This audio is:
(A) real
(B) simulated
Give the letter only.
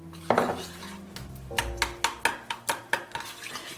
A